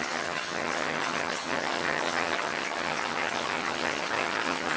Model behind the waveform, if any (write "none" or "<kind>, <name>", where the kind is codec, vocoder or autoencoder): vocoder, HiFi-GAN